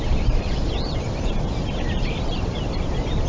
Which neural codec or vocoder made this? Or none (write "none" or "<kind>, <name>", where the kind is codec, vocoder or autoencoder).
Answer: vocoder, BigVGAN v2